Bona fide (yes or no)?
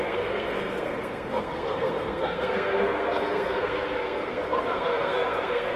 no